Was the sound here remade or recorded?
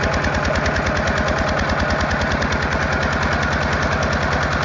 recorded